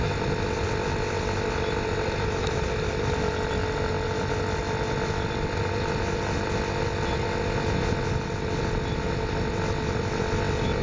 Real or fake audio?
real